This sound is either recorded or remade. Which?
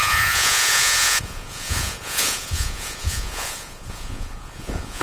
remade